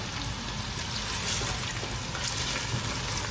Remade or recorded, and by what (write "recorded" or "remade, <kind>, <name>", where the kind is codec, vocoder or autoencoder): recorded